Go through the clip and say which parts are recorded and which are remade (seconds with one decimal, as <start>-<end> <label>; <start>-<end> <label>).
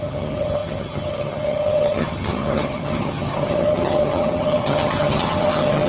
0.0-5.9 remade